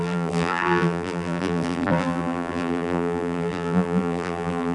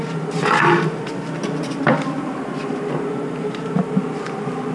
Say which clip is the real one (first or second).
second